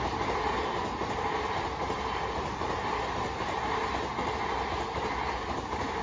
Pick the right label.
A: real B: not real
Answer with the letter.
A